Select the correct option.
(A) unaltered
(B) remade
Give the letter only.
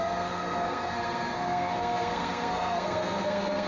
B